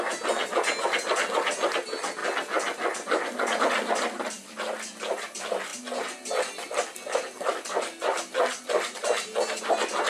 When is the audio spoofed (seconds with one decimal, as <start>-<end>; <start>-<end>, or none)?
none